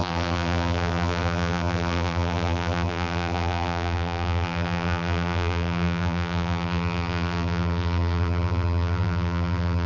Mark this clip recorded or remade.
remade